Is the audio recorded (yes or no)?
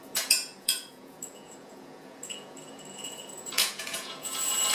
no